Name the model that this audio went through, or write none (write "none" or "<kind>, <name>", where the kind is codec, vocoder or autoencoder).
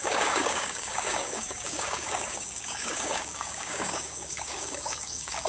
codec, DAC